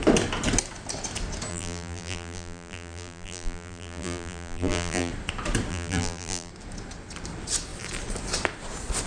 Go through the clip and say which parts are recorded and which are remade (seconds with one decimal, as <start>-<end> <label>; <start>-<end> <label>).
0.0-1.5 recorded; 1.5-5.1 remade; 5.1-5.7 recorded; 5.7-6.5 remade; 6.5-9.1 recorded

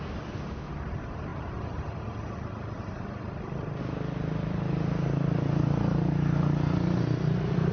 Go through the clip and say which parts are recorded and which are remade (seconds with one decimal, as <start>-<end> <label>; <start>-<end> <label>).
0.0-7.7 recorded

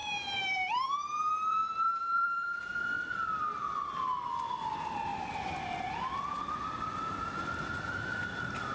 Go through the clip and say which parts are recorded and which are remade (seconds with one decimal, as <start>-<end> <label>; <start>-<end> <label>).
0.0-4.6 remade; 4.6-5.1 recorded; 5.1-6.4 remade; 6.4-8.7 recorded

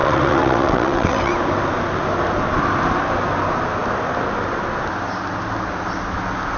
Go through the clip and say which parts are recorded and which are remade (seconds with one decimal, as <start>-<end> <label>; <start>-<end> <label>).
0.0-1.3 remade; 1.3-6.6 recorded

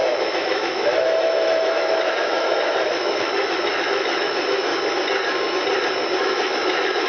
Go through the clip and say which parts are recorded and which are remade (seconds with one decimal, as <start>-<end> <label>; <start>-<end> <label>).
0.0-4.7 remade; 4.7-6.2 recorded; 6.2-7.1 remade